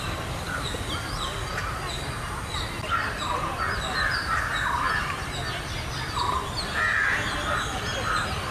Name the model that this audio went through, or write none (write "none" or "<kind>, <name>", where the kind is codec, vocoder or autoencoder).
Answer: none